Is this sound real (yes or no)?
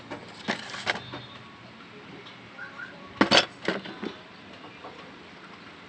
yes